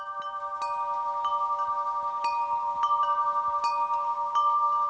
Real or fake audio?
real